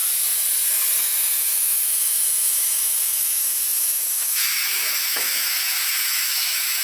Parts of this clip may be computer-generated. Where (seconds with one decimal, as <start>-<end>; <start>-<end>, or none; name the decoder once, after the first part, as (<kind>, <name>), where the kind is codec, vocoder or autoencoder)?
1.0-6.8 (autoencoder, DAC-VAE)